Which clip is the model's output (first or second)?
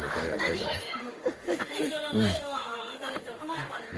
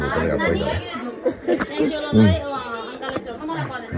first